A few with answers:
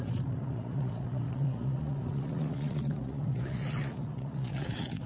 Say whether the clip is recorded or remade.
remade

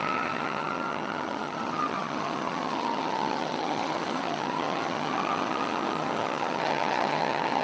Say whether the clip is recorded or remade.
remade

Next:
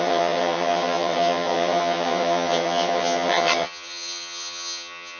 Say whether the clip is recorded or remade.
remade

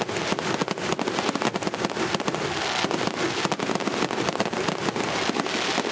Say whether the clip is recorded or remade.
recorded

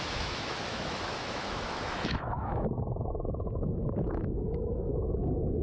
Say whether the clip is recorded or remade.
remade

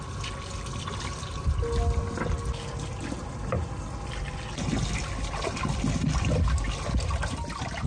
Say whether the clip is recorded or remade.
recorded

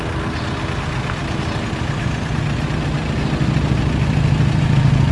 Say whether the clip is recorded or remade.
recorded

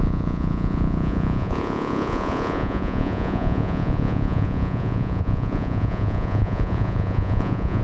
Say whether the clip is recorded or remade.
remade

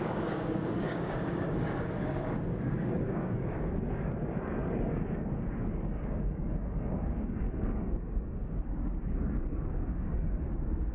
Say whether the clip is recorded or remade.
remade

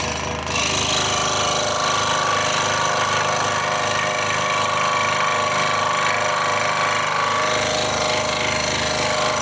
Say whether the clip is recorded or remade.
recorded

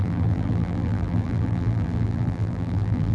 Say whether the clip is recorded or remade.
remade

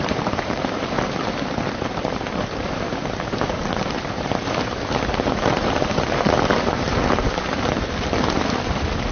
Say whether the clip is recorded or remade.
remade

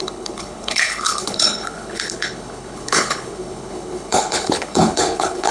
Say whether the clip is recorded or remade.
remade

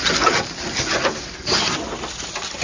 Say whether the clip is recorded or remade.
recorded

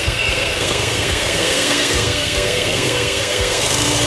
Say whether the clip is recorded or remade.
remade